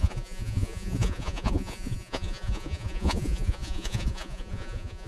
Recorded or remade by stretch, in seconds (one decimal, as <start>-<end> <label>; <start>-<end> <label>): 0.0-5.1 remade